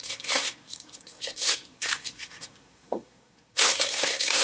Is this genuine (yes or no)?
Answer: no